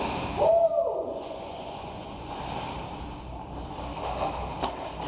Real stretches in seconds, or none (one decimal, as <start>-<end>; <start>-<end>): 0.0-1.0; 2.4-5.1